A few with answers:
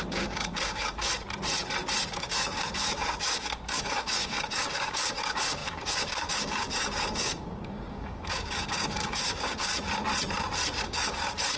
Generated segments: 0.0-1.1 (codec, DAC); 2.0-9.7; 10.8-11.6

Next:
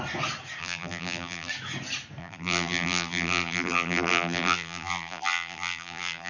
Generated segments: 0.6-1.5 (vocoder, BigVGAN v2); 2.2-6.3

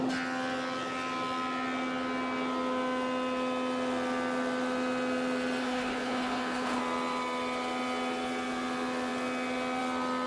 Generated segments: 5.6-6.8 (codec, HILCodec)

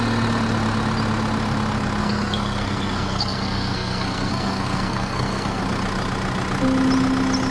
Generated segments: 2.0-5.6 (codec, SNAC)

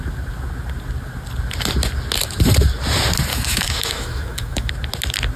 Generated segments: 3.3-4.7 (autoencoder, DAC-VAE)

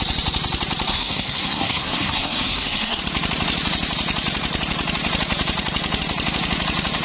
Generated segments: 0.9-3.0 (codec, SNAC)